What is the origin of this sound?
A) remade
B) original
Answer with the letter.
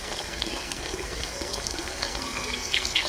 A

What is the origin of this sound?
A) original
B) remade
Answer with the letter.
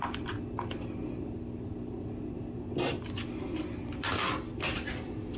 A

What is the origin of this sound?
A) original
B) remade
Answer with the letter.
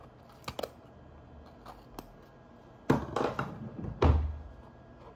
A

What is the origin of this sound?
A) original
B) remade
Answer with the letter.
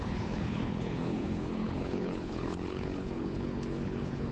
B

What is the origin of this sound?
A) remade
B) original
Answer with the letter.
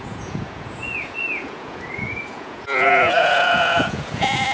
A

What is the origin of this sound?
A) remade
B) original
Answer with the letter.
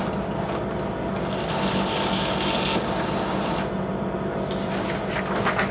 B